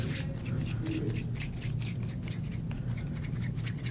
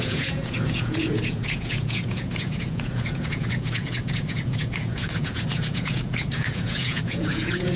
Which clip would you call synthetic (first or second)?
second